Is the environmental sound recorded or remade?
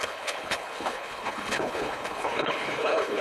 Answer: remade